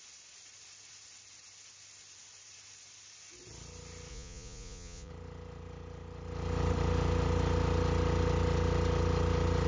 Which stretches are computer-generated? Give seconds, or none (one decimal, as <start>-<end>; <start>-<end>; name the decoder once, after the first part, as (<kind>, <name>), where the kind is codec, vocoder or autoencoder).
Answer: 4.1-5.1 (vocoder, Vocos)